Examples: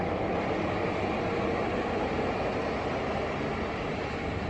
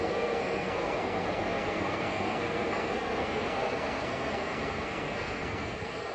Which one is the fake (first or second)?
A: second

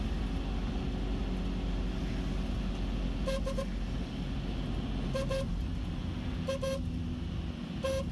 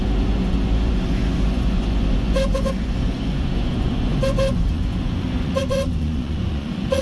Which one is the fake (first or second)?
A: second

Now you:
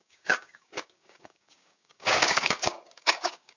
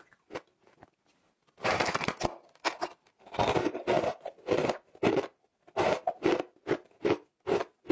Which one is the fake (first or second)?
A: first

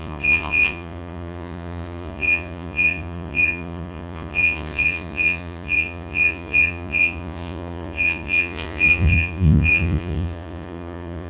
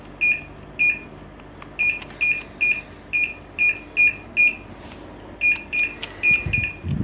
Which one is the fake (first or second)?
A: first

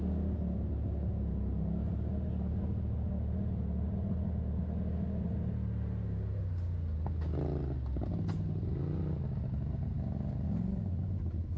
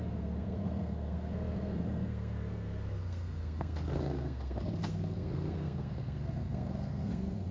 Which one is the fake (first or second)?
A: second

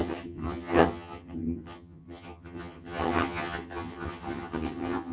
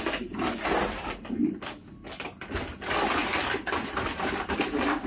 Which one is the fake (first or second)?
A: first